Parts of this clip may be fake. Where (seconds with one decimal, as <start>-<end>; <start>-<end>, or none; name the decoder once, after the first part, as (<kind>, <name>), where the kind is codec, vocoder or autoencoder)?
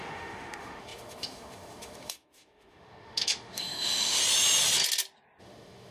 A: 0.0-4.2 (autoencoder, DAC-VAE); 5.4-5.9